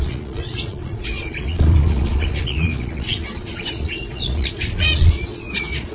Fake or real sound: fake